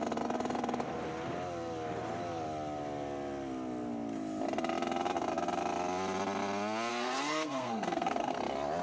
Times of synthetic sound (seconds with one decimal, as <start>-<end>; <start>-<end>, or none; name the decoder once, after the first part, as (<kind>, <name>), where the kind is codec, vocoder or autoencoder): 6.9-8.4 (codec, SNAC)